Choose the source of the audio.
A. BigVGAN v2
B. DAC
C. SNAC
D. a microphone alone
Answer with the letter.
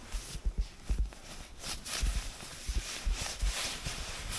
D